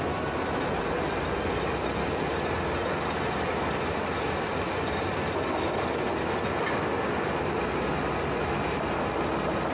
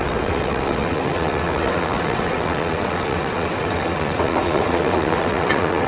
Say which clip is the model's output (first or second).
second